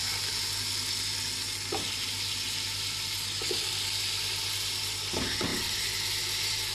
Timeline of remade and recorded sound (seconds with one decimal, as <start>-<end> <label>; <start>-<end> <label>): 0.0-6.7 recorded

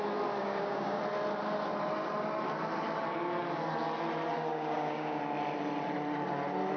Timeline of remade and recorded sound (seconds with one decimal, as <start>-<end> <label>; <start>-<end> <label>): 0.0-0.4 recorded; 0.4-1.0 remade; 1.0-4.5 recorded; 4.5-5.2 remade; 5.2-6.8 recorded

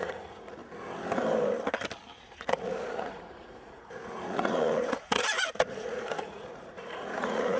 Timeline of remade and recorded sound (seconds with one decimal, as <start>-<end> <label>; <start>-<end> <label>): 0.0-0.6 remade; 0.6-2.2 recorded; 2.2-7.6 remade

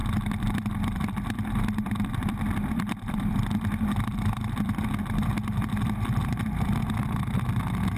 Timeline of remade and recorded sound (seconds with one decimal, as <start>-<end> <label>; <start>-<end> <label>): 0.0-4.8 remade; 4.8-6.2 recorded; 6.2-6.8 remade; 6.8-8.0 recorded

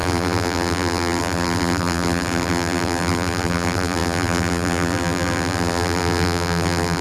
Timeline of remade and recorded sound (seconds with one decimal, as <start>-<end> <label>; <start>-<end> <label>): 0.0-7.0 remade

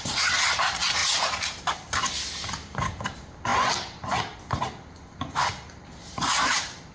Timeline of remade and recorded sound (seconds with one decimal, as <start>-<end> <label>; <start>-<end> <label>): 0.0-6.9 recorded

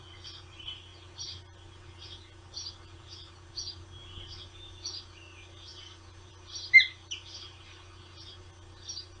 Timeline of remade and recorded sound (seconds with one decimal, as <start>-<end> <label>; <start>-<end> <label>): 0.0-9.2 recorded

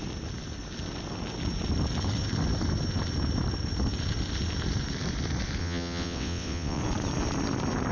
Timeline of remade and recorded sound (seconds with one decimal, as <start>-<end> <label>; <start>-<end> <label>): 0.0-5.6 recorded; 5.6-6.8 remade; 6.8-7.9 recorded